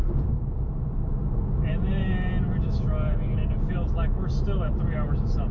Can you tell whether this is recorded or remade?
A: recorded